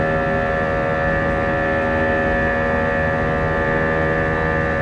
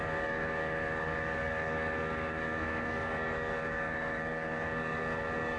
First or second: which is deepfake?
second